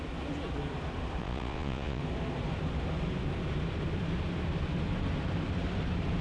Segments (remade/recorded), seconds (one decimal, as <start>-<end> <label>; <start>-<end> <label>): 0.0-1.2 recorded; 1.2-2.0 remade; 2.0-6.2 recorded